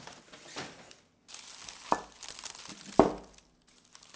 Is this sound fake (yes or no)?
no